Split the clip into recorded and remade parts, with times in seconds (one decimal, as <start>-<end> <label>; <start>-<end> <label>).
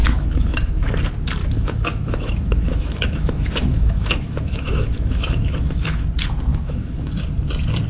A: 0.0-0.9 remade; 0.9-1.4 recorded; 1.4-6.1 remade; 6.1-6.5 recorded; 6.5-7.1 remade; 7.1-7.9 recorded